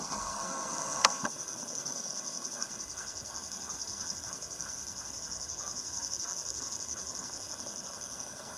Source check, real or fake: fake